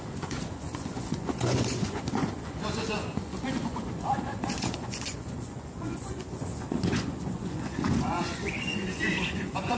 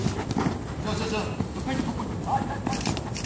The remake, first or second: first